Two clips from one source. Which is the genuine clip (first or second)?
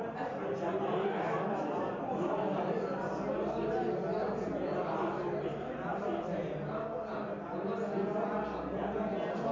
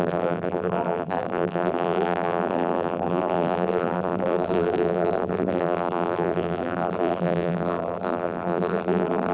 first